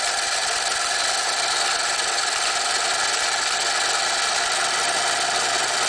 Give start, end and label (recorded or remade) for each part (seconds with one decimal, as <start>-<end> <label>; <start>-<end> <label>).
0.0-5.9 recorded